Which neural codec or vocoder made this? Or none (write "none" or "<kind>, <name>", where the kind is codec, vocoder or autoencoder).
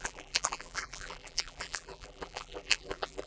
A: vocoder, BigVGAN v2